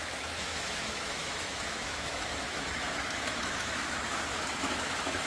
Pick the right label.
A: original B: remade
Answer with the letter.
B